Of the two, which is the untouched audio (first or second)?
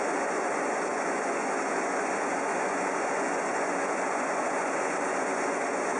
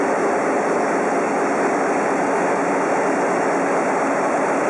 second